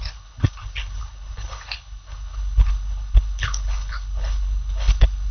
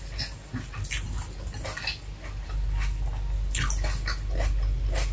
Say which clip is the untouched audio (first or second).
second